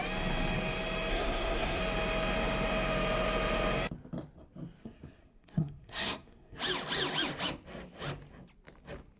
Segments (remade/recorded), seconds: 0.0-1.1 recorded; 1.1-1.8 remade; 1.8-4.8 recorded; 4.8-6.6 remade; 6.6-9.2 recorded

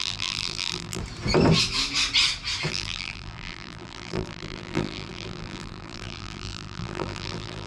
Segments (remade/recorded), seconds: 0.0-1.0 remade; 1.0-2.7 recorded; 2.7-7.7 remade

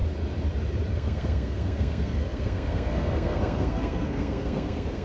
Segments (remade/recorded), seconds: 0.0-0.9 recorded; 0.9-5.0 remade

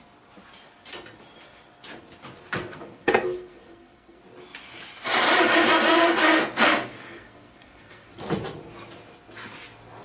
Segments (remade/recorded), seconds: 0.0-2.6 recorded; 2.6-4.2 remade; 4.2-6.2 recorded; 6.2-8.1 remade; 8.1-10.0 recorded

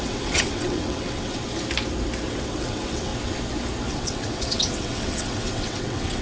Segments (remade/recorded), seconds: 0.0-1.4 remade; 1.4-2.3 recorded; 2.3-3.1 remade; 3.1-3.9 recorded; 3.9-6.2 remade

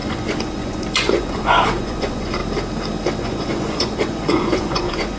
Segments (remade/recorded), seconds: 0.0-2.4 remade; 2.4-3.2 recorded; 3.2-5.2 remade

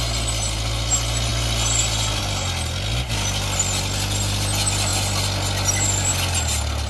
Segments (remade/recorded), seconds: 0.0-6.9 recorded